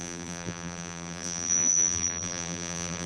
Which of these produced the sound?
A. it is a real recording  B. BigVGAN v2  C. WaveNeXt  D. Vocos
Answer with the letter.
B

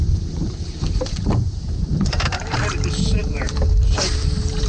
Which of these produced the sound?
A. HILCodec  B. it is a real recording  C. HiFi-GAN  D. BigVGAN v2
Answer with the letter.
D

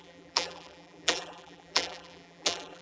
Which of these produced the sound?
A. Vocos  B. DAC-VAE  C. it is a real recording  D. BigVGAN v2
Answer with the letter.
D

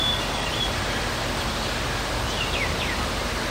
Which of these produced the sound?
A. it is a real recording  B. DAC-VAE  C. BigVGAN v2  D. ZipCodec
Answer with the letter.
A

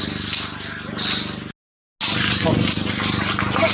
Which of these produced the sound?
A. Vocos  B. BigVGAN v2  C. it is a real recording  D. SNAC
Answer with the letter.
C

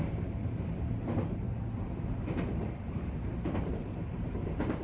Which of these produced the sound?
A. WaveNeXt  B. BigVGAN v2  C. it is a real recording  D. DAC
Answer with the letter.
B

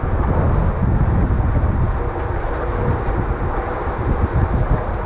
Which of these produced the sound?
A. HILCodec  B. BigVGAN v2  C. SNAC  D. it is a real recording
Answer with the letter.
D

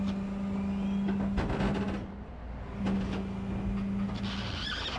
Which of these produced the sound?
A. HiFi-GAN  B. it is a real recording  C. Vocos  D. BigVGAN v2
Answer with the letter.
B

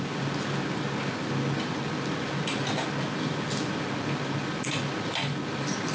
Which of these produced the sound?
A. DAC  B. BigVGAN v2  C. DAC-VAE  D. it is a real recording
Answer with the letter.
D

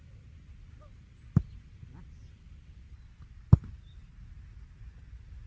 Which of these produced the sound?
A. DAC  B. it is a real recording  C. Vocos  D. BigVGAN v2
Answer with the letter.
B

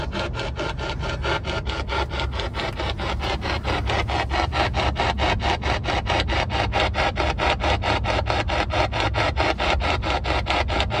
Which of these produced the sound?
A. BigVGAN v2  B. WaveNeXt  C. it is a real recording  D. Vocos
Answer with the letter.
C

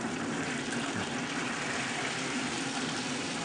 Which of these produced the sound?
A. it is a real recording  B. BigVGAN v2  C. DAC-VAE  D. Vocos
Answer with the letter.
B